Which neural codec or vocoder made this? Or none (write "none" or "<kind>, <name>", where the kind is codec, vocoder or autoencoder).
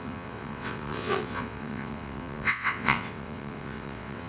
vocoder, WaveNeXt